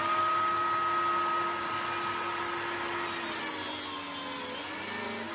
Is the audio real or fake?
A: real